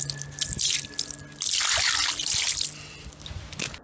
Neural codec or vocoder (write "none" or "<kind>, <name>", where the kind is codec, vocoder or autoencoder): none